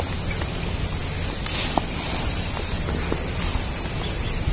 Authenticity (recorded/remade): recorded